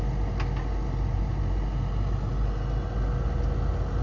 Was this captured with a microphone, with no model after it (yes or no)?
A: yes